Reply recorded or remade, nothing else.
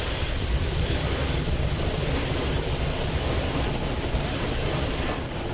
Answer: recorded